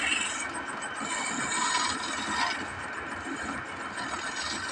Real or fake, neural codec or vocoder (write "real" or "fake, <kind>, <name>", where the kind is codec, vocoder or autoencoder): real